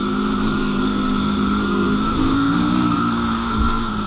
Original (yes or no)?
no